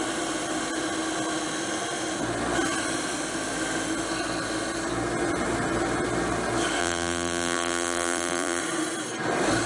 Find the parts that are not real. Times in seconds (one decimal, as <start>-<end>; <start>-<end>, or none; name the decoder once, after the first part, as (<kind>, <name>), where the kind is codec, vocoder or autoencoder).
6.8-8.6 (vocoder, BigVGAN v2)